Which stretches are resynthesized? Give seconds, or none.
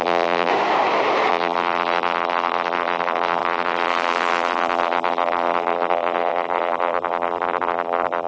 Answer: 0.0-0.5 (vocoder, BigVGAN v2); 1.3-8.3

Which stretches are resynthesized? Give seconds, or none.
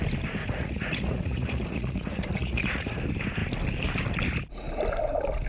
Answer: 0.4-3.0 (vocoder, Vocos)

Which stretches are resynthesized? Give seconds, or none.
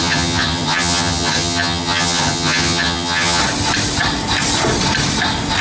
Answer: 0.0-3.4 (vocoder, HiFi-GAN)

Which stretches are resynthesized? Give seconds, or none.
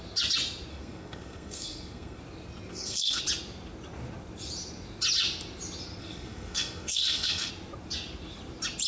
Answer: 0.7-2.2 (codec, SNAC); 2.7-3.2; 6.0-7.5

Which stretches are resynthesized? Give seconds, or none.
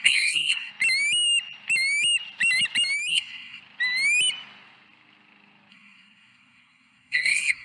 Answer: 0.0-0.7 (codec, SNAC); 3.1-3.6; 5.7-7.6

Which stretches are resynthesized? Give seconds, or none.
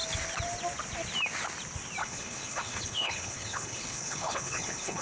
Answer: 2.0-5.0 (codec, HILCodec)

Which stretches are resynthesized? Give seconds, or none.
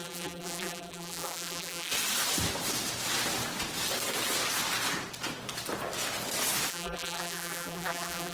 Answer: 0.0-1.9 (vocoder, BigVGAN v2); 6.7-8.3